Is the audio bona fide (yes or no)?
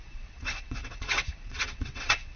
no